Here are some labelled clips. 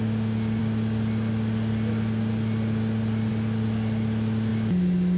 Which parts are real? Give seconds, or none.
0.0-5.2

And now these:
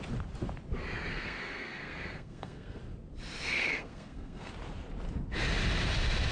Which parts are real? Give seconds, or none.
0.0-1.1; 2.8-3.5; 4.5-6.3

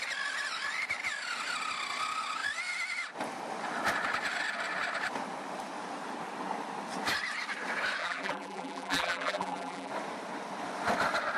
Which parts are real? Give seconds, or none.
0.0-8.0; 9.9-11.4

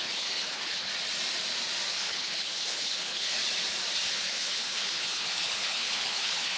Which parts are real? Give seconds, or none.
0.9-1.9; 3.4-4.1

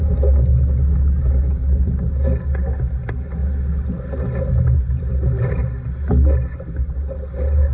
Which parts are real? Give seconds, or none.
0.5-3.0; 3.4-7.3

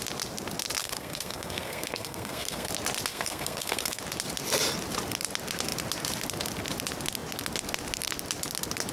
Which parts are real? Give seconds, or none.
0.0-0.8; 2.7-3.1; 4.0-8.9

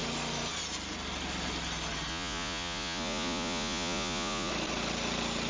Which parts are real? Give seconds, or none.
0.0-2.1; 4.5-5.5